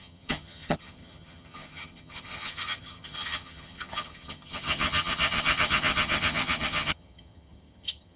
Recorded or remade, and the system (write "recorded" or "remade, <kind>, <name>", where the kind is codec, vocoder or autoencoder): remade, vocoder, HiFi-GAN